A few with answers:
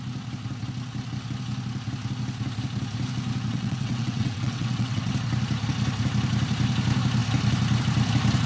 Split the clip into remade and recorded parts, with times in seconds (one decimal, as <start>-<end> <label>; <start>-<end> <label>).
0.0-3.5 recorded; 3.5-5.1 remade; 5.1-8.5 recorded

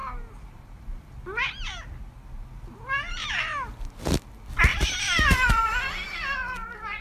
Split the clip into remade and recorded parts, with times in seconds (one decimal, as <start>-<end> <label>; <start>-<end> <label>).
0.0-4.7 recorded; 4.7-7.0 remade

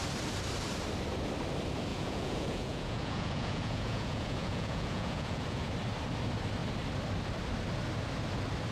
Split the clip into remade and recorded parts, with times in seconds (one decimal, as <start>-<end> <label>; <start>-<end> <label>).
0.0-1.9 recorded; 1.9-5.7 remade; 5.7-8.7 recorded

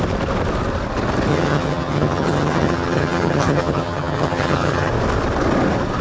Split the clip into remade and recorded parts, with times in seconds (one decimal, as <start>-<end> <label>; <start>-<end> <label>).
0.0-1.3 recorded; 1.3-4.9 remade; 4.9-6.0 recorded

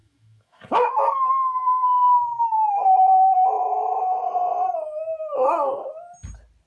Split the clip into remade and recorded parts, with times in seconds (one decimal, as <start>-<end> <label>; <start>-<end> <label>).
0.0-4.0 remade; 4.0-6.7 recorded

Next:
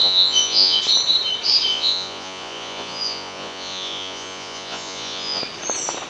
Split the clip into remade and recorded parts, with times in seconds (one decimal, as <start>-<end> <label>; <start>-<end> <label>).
0.0-0.8 remade; 0.8-1.7 recorded; 1.7-5.4 remade; 5.4-6.1 recorded

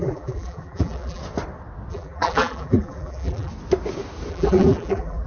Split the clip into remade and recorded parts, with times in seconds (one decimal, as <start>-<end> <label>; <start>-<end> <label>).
0.0-1.2 remade; 1.2-1.9 recorded; 1.9-3.5 remade; 3.5-4.3 recorded; 4.3-5.3 remade

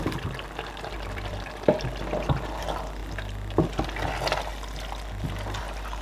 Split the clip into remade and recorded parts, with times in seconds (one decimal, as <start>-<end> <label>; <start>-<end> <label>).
0.0-3.0 remade; 3.0-4.1 recorded; 4.1-4.5 remade; 4.5-5.6 recorded; 5.6-6.0 remade